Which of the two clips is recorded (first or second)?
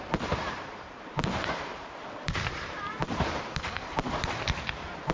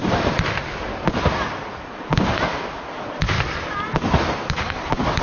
second